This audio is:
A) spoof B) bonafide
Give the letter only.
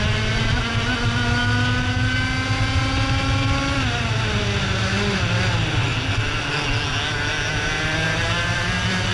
B